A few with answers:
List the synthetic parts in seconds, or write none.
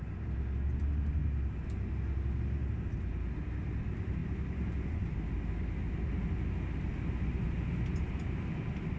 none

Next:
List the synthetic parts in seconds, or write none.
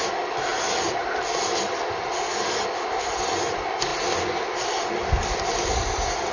none